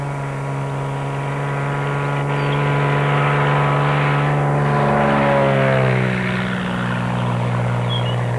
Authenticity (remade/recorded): recorded